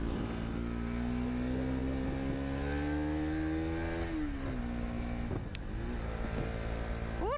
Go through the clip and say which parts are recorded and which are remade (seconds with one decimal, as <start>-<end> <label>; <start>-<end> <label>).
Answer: 0.0-7.4 recorded